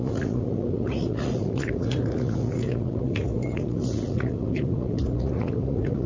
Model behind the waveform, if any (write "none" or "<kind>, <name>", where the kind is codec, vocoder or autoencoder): vocoder, Vocos